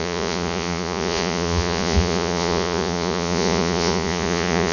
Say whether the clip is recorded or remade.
remade